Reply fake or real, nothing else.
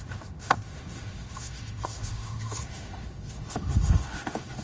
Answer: fake